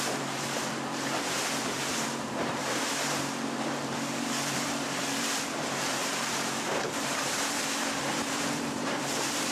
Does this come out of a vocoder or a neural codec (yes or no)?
yes